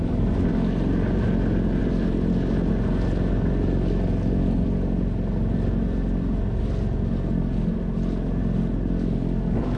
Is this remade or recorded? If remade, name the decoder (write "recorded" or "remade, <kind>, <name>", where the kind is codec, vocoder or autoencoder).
recorded